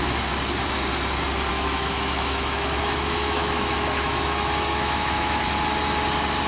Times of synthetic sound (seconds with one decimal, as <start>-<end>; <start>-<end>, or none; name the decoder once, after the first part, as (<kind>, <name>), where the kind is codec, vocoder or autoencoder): 1.5-5.4 (autoencoder, DAC-VAE)